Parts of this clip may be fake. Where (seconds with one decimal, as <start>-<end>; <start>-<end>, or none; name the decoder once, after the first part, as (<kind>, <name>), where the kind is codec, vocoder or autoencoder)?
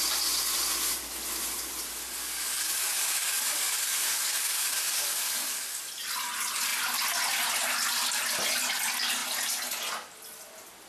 2.2-5.8 (codec, DAC)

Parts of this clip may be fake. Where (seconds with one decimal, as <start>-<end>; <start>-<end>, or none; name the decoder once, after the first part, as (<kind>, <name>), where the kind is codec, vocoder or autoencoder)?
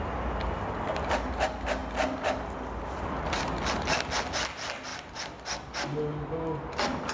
none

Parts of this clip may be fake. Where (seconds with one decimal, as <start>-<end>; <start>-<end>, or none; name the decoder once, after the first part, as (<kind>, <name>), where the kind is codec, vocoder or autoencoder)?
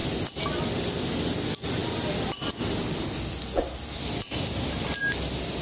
none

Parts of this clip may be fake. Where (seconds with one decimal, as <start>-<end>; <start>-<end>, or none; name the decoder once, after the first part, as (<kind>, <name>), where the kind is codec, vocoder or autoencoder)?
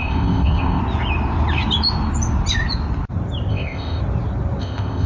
0.0-0.8 (codec, ZipCodec); 3.5-4.0; 4.6-5.1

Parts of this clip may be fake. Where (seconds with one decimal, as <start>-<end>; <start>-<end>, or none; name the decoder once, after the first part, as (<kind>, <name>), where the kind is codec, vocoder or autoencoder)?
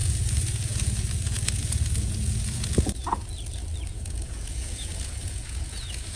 0.0-3.3 (vocoder, Vocos); 3.9-6.2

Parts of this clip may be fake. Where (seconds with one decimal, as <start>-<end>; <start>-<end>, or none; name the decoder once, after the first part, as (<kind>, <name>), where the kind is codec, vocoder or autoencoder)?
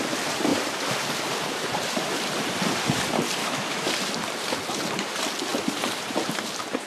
3.4-3.9 (autoencoder, DAC-VAE)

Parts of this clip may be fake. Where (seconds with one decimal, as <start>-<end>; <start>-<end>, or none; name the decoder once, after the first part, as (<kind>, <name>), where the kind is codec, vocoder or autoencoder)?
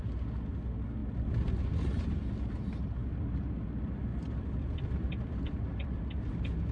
3.0-3.5 (vocoder, BigVGAN v2); 4.1-6.0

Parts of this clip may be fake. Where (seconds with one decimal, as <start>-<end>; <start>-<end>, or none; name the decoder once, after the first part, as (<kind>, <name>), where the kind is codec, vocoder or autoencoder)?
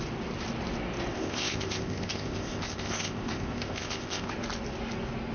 1.1-4.3 (codec, ZipCodec)